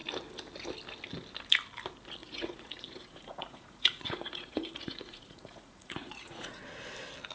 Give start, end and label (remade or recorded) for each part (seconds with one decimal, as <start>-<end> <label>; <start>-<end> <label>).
0.0-2.2 recorded; 2.2-6.6 remade; 6.6-7.3 recorded